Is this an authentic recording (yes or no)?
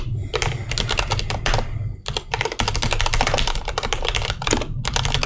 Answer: yes